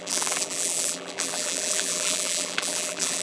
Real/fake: fake